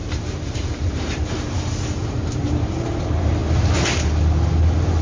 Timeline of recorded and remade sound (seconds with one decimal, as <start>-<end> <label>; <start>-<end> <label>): 0.0-3.4 remade; 3.4-5.0 recorded